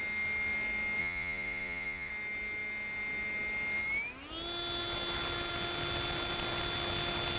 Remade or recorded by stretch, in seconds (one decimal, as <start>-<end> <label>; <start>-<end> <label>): 0.0-1.0 recorded; 1.0-2.1 remade; 2.1-7.4 recorded